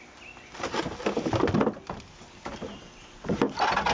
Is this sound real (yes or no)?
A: yes